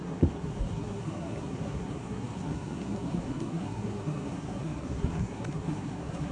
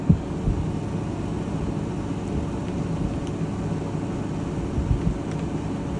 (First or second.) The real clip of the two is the second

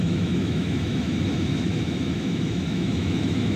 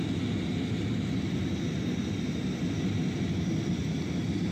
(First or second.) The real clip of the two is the second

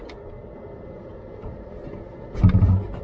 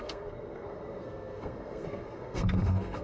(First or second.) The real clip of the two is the first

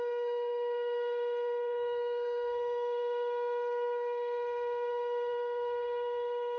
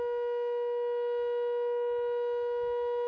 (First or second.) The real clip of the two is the second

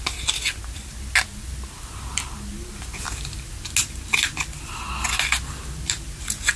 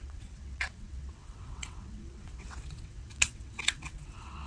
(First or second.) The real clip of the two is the first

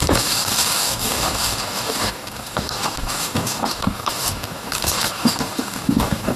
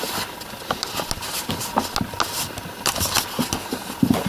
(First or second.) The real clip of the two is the second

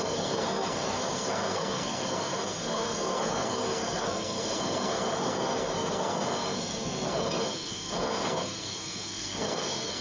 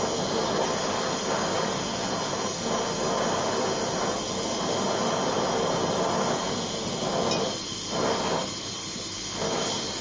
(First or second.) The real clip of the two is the second